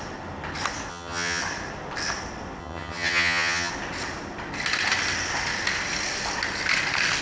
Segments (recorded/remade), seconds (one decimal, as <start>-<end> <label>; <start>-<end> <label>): 0.0-0.9 recorded; 0.9-1.4 remade; 1.4-2.6 recorded; 2.6-3.7 remade; 3.7-7.2 recorded